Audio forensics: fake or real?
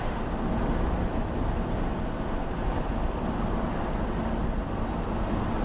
real